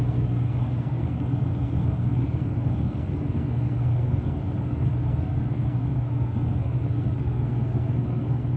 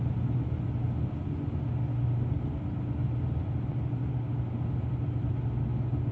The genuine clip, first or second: second